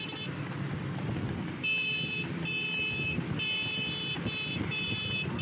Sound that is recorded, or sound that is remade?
remade